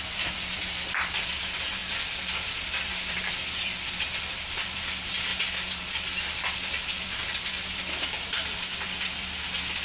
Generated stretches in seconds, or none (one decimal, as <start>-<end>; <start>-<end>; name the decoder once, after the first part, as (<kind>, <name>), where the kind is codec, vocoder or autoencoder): 0.0-5.3 (vocoder, BigVGAN v2); 5.8-9.8